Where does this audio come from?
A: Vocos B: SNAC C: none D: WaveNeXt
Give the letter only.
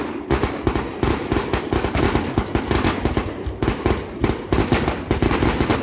C